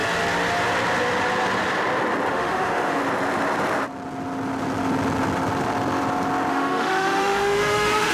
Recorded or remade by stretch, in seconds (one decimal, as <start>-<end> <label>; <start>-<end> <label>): 0.0-2.3 recorded; 2.3-3.0 remade; 3.0-6.5 recorded; 6.5-8.1 remade